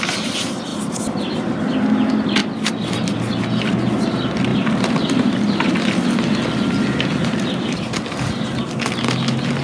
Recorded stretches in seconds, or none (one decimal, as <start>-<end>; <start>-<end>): 0.0-4.5; 5.7-9.6